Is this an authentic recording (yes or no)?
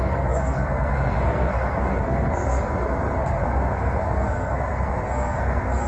no